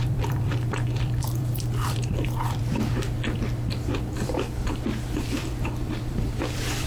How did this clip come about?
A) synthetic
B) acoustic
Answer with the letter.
A